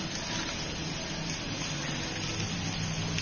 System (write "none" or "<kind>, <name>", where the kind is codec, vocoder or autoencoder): none